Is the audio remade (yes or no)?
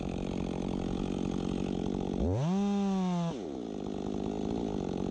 no